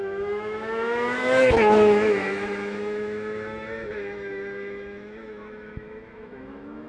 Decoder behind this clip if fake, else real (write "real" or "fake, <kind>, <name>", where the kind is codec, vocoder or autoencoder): fake, autoencoder, DAC-VAE